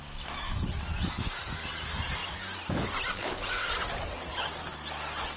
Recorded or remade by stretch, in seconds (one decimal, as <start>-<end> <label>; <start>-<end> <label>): 0.0-5.4 recorded